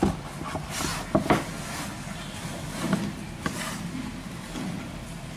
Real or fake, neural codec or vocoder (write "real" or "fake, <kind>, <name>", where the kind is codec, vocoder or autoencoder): real